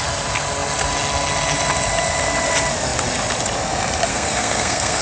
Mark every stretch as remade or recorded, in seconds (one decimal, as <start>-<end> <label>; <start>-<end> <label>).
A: 0.0-4.1 recorded; 4.1-5.0 remade